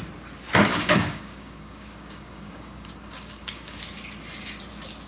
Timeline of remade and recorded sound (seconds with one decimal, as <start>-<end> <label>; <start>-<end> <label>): 0.0-0.7 recorded; 0.7-3.8 remade; 3.8-5.1 recorded

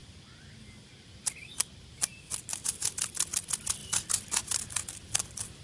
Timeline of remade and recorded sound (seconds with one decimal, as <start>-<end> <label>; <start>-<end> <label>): 0.0-0.5 remade; 0.5-2.1 recorded; 2.1-2.7 remade; 2.7-3.8 recorded; 3.8-4.9 remade; 4.9-5.6 recorded